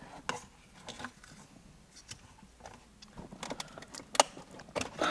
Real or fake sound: real